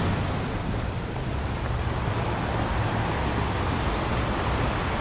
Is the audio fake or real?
real